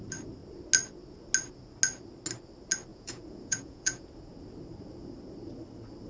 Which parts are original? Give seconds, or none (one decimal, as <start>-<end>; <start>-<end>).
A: 0.0-2.9; 4.1-6.1